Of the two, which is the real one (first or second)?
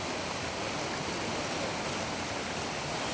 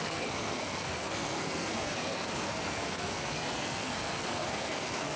first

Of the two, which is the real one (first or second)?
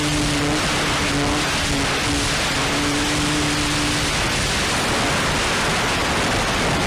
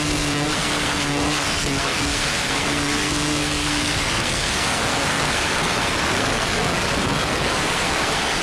first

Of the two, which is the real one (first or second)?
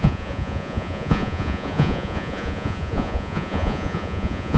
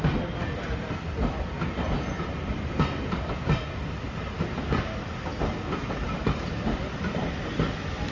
second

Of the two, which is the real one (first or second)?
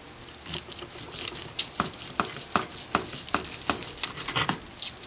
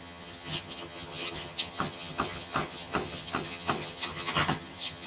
first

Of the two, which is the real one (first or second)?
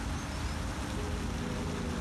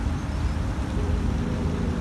first